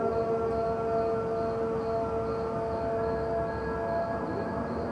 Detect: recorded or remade recorded